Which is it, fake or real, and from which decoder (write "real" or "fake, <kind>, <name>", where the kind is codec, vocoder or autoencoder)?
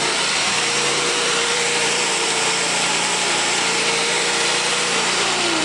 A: fake, vocoder, BigVGAN v2